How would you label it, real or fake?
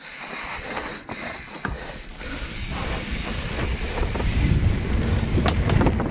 real